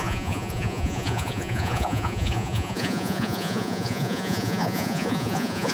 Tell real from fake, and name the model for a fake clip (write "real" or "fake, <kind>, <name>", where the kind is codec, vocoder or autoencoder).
fake, vocoder, Vocos